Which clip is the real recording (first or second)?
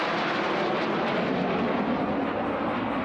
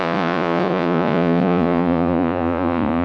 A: first